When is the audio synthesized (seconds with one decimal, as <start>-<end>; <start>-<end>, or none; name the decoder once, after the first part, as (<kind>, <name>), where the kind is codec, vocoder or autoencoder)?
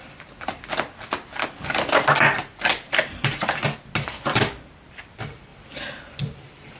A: 2.7-3.3 (vocoder, BigVGAN v2)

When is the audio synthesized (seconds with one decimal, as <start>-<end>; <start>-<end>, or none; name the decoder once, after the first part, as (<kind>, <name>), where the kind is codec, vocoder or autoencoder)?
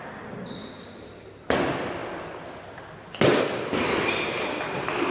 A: none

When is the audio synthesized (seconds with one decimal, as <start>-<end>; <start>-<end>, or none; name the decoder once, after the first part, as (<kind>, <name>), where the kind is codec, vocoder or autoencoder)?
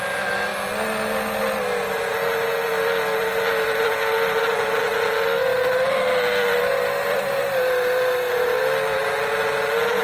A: none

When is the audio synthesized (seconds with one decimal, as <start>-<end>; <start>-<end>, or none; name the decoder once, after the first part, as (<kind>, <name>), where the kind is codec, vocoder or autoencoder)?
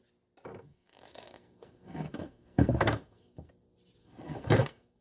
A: 0.5-3.5 (codec, SNAC); 4.0-5.0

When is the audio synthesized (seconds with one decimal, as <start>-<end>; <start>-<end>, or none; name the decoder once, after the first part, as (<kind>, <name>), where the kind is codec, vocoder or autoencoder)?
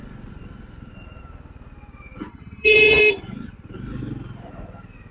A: 2.3-3.0 (vocoder, HiFi-GAN)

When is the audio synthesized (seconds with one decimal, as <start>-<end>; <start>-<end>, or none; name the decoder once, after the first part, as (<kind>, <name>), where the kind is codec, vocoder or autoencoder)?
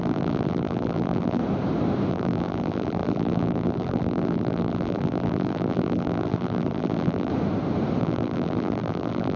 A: 0.0-1.4 (vocoder, BigVGAN v2); 2.1-7.3; 8.0-9.4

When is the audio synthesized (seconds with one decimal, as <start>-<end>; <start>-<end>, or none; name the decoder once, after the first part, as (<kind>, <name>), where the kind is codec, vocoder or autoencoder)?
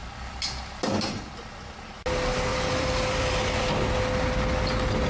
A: 2.5-3.6 (vocoder, BigVGAN v2)